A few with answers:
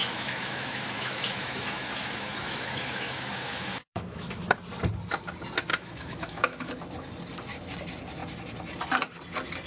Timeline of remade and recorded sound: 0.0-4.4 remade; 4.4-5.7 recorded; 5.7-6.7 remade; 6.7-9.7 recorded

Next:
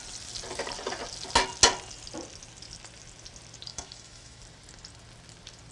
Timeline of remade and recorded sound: 0.0-3.7 recorded; 3.7-4.4 remade; 4.4-5.7 recorded

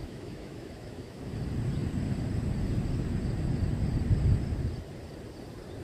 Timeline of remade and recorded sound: 0.0-1.2 remade; 1.2-5.8 recorded

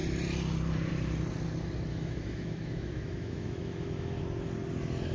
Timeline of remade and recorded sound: 0.0-1.9 recorded; 1.9-4.2 remade; 4.2-5.1 recorded

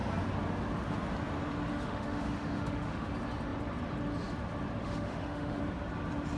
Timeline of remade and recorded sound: 0.0-1.7 recorded; 1.7-3.1 remade; 3.1-4.8 recorded; 4.8-5.6 remade; 5.6-6.4 recorded

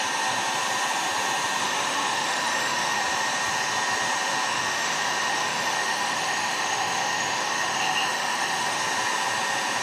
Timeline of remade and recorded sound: 0.0-1.6 recorded; 1.6-3.0 remade; 3.0-4.5 recorded; 4.5-8.8 remade; 8.8-9.8 recorded

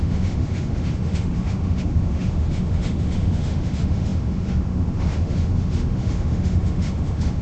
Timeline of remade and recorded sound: 0.0-7.4 remade